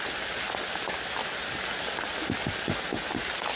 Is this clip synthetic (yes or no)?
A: no